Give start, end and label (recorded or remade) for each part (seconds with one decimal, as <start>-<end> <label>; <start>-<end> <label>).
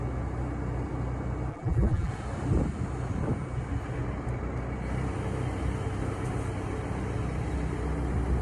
0.0-1.5 recorded; 1.5-2.1 remade; 2.1-8.4 recorded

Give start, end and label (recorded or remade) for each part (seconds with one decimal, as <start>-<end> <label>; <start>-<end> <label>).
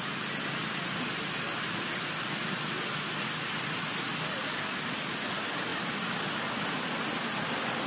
0.0-7.9 recorded